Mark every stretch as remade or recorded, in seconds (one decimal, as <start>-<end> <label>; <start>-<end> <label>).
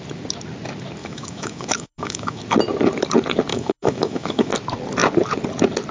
0.0-1.0 recorded; 1.0-2.4 remade; 2.4-3.5 recorded; 3.5-4.5 remade; 4.5-5.9 recorded